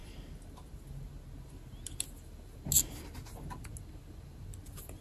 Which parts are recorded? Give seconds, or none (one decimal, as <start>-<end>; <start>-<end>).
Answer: 0.0-5.0